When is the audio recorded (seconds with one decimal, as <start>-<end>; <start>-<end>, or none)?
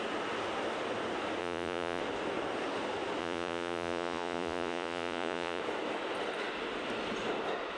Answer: 0.0-1.4; 2.0-3.2; 5.6-7.8